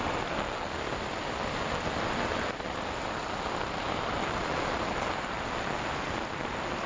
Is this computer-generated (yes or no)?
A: no